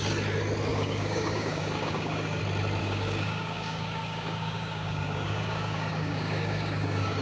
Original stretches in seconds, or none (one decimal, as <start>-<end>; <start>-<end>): 0.0-0.7; 2.4-2.8